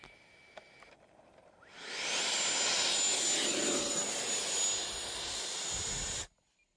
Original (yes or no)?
yes